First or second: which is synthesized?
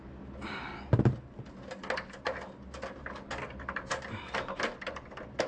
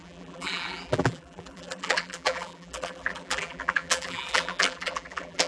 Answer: second